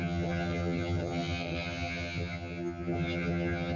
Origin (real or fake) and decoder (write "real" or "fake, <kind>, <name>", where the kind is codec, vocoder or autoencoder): fake, vocoder, HiFi-GAN